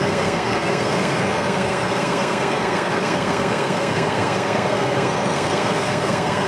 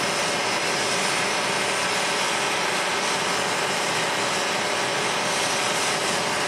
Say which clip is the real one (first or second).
second